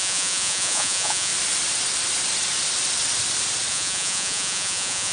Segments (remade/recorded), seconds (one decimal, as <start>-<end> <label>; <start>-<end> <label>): 0.0-1.3 remade; 1.3-3.7 recorded; 3.7-5.1 remade